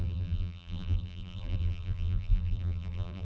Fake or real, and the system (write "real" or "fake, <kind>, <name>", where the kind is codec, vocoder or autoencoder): fake, vocoder, BigVGAN v2